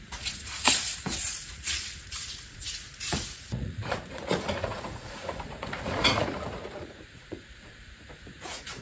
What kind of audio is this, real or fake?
fake